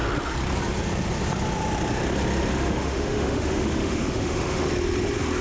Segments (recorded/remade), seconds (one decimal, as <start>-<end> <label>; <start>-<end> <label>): 0.0-2.5 recorded; 2.5-4.7 remade; 4.7-5.4 recorded